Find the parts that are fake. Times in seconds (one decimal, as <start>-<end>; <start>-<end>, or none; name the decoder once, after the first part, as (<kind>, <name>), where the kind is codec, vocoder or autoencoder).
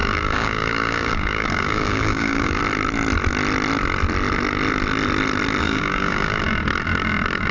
0.0-2.6 (codec, DAC); 5.6-6.4